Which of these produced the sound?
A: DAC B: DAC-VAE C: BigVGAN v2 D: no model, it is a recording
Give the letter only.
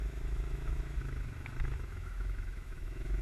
B